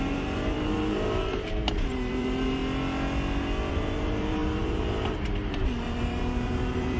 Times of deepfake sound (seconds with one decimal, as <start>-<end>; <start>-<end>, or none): 0.0-2.6; 3.7-7.0

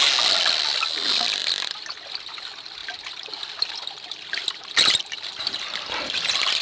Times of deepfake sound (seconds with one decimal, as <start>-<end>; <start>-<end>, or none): 2.8-5.4

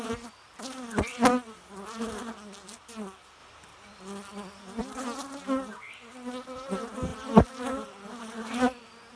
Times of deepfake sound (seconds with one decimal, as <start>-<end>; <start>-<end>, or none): none

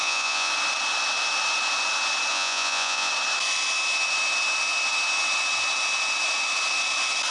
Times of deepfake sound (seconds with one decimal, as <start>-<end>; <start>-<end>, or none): 0.0-0.5; 2.3-3.1